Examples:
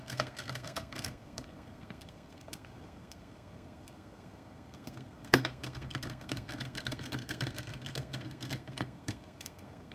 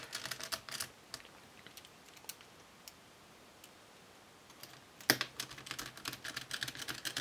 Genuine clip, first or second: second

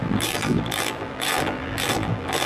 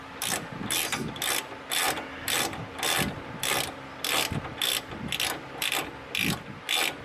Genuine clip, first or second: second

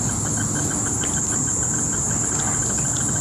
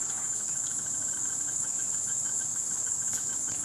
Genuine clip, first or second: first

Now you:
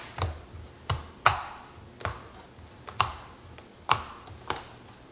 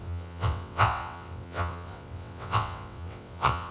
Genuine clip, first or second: first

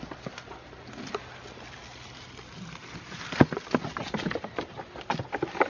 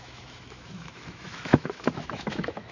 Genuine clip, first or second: first